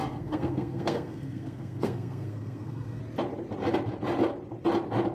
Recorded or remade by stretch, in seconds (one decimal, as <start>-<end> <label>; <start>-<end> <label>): 0.0-3.0 remade; 3.0-5.1 recorded